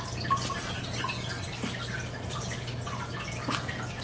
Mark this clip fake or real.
real